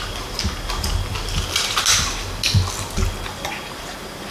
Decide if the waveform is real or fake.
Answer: real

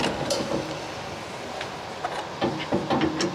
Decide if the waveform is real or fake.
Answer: real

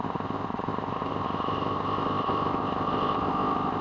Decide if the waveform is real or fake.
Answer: fake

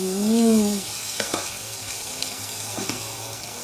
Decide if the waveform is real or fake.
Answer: fake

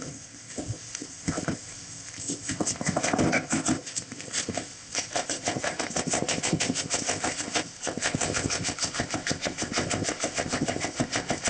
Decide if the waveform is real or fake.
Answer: fake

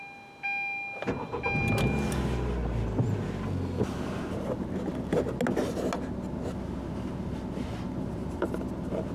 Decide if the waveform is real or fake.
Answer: real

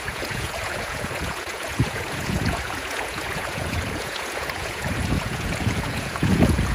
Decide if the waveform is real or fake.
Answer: fake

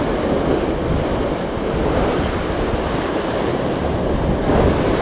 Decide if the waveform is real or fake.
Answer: real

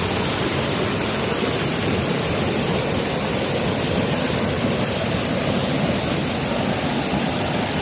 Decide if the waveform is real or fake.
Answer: real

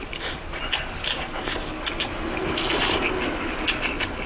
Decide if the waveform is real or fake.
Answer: real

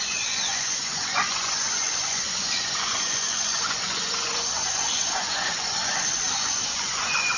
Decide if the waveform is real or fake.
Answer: fake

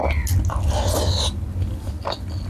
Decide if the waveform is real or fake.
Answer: real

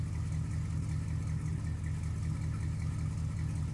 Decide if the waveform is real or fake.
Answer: real